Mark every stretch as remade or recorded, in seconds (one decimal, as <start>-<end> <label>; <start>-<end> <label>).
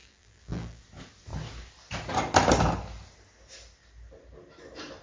0.0-0.8 remade; 0.8-5.0 recorded